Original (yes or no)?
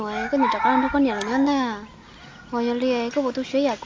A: yes